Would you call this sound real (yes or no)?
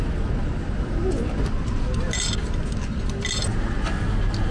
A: yes